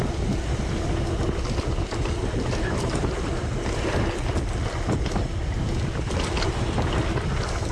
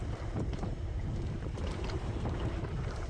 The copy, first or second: second